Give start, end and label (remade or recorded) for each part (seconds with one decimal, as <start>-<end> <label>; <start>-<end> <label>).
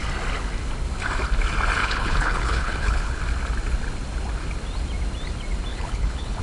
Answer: 0.0-1.8 recorded; 1.8-3.2 remade; 3.2-5.7 recorded; 5.7-6.4 remade